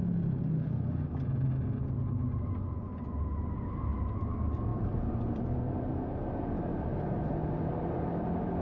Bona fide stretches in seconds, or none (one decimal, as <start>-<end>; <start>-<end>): 0.0-4.7; 5.5-8.6